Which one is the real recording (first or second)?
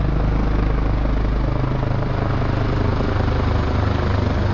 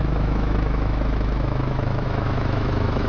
first